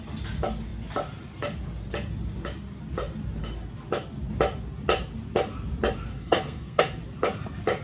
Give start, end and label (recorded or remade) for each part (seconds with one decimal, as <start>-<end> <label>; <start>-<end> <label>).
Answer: 0.0-6.1 recorded; 6.1-6.8 remade; 6.8-7.8 recorded